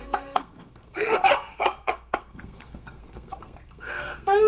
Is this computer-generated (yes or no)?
yes